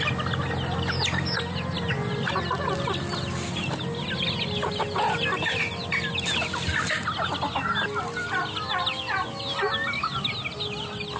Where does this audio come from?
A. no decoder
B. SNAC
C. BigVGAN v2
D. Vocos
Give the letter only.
A